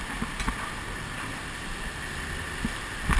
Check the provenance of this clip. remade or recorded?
recorded